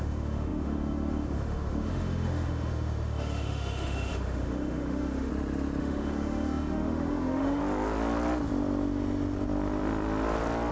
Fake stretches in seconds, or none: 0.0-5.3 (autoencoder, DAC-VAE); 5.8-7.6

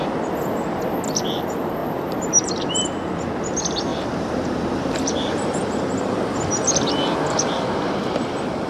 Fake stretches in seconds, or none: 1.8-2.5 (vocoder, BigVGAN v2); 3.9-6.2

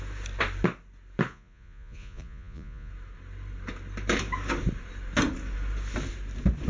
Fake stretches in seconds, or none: 1.3-2.9 (vocoder, Vocos)

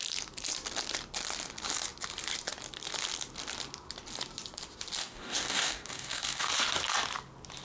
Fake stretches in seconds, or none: 5.0-6.5 (codec, DAC)

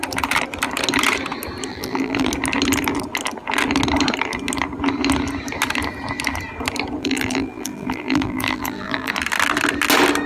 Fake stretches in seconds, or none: 1.7-2.3 (vocoder, BigVGAN v2); 7.0-9.1

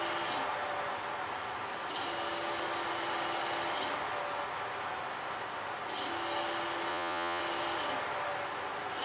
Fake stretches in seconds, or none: 6.9-7.4 (vocoder, Vocos)

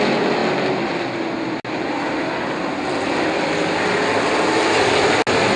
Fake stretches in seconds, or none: none